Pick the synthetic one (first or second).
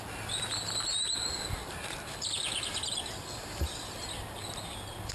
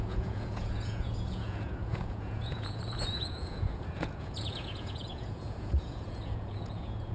second